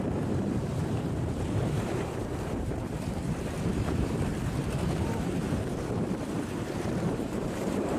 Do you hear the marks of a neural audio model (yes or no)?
yes